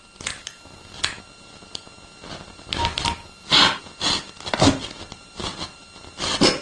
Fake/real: real